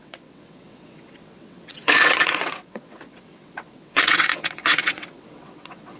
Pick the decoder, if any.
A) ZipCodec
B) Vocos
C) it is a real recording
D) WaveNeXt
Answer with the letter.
D